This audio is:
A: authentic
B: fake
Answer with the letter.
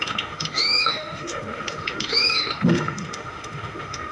B